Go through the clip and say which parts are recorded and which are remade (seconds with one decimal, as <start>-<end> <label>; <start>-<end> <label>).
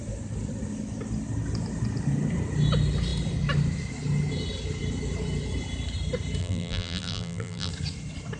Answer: 0.0-6.4 recorded; 6.4-7.7 remade; 7.7-8.4 recorded